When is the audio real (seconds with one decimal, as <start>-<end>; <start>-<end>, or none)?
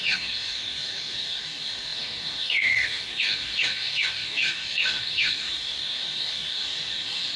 none